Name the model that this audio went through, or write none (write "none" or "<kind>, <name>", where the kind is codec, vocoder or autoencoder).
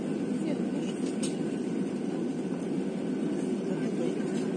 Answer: none